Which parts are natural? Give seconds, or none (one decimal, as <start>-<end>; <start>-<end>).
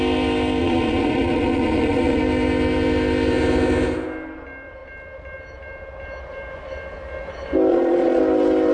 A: 0.0-0.6; 2.2-7.7; 8.2-8.7